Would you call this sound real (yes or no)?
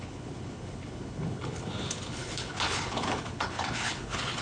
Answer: no